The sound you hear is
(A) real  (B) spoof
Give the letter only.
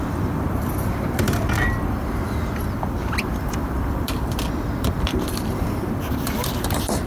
B